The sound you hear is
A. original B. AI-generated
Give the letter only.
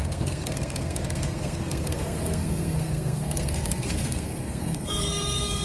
B